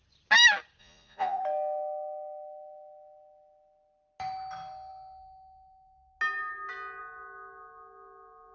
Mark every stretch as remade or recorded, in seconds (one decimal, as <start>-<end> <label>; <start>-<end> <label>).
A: 0.0-0.8 recorded; 0.8-1.4 remade; 1.4-8.5 recorded